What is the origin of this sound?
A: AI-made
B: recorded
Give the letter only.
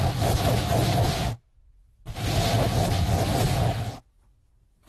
B